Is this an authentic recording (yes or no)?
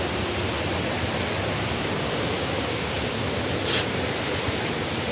yes